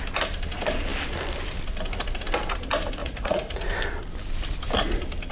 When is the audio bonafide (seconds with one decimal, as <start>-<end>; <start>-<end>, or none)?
0.0-3.0; 3.7-5.3